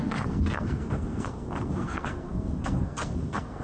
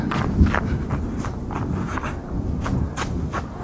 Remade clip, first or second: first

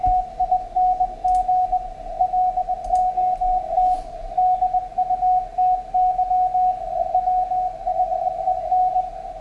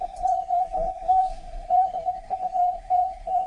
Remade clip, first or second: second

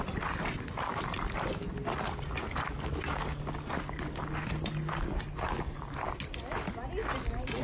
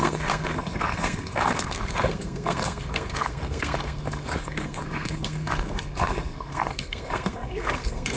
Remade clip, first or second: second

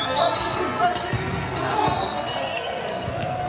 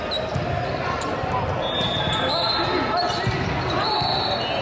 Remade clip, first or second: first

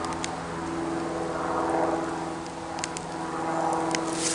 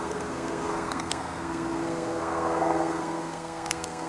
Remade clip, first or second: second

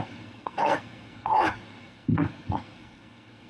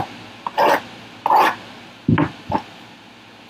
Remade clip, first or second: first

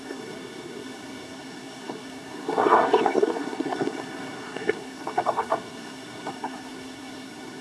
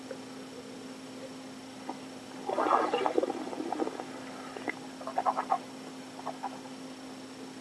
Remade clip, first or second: first